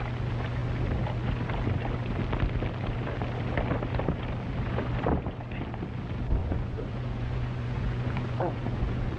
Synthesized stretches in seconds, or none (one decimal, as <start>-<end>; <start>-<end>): 6.4-9.2